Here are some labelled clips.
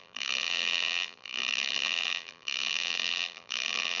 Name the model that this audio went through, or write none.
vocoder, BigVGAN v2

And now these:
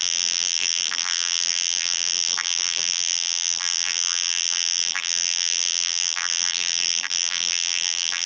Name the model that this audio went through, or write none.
vocoder, BigVGAN v2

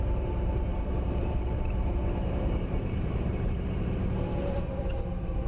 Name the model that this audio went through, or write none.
vocoder, BigVGAN v2